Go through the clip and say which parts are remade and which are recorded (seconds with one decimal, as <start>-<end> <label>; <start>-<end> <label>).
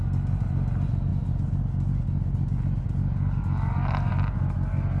0.0-5.0 recorded